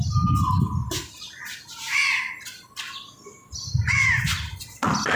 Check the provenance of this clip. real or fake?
real